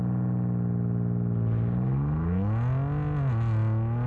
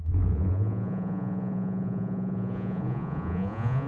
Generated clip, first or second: second